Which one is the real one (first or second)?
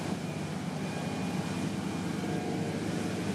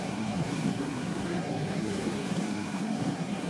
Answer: first